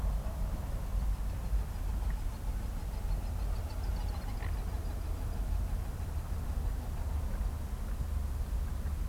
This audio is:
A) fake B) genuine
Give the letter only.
B